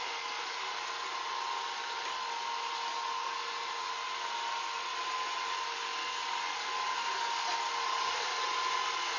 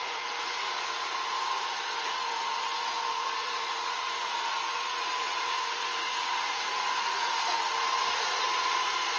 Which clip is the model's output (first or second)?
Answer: second